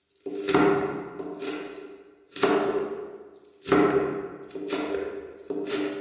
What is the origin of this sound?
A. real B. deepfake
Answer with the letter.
A